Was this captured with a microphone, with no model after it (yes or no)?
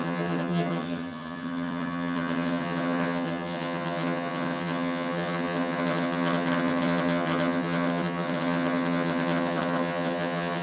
no